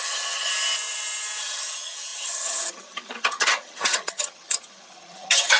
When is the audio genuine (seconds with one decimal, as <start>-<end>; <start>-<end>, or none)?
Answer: 0.5-1.4